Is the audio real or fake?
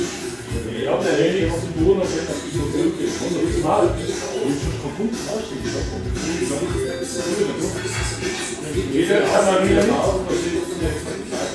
real